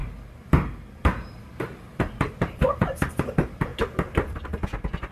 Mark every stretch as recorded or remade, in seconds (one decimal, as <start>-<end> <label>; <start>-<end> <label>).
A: 0.0-3.7 remade; 3.7-5.1 recorded